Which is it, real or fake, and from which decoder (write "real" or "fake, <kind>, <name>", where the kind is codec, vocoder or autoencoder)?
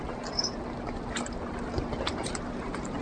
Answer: real